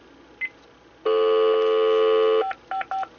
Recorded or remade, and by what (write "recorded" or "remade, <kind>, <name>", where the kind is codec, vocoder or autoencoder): recorded